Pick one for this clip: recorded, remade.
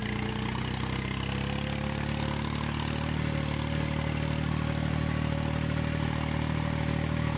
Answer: recorded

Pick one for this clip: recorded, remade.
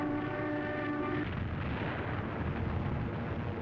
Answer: recorded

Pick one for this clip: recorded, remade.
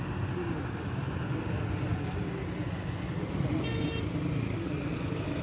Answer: recorded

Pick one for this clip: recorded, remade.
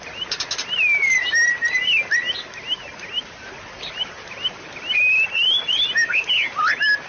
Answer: recorded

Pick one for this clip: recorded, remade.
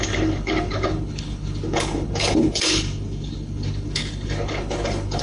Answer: remade